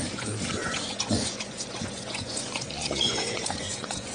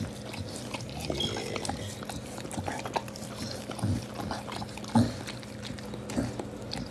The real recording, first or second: second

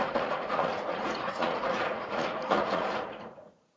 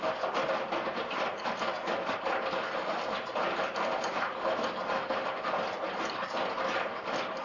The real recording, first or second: second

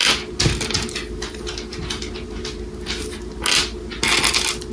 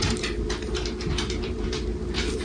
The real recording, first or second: first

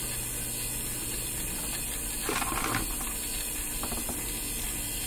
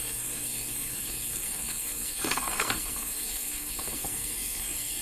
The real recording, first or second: first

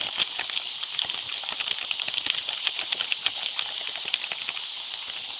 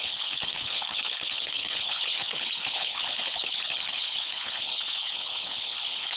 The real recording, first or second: first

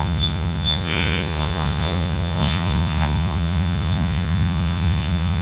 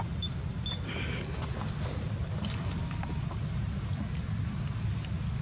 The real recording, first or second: second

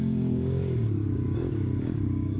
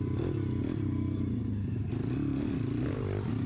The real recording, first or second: second